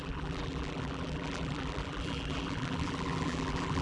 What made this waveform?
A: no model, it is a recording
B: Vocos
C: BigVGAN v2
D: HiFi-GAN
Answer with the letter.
C